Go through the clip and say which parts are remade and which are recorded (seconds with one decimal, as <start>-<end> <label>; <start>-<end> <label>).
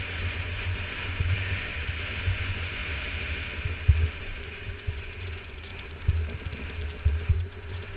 0.0-1.7 remade; 1.7-2.2 recorded; 2.2-2.8 remade; 2.8-4.2 recorded; 4.2-5.7 remade; 5.7-7.3 recorded; 7.3-8.0 remade